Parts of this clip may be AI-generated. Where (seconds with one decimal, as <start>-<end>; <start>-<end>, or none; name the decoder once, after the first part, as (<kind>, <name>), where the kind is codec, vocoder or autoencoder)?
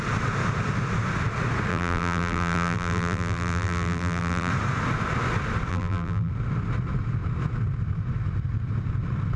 1.7-4.5 (vocoder, BigVGAN v2); 5.7-6.3